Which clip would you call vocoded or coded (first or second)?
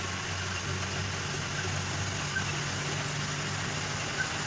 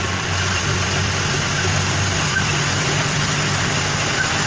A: second